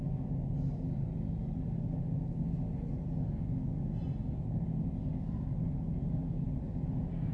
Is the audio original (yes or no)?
yes